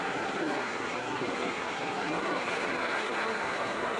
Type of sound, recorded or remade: remade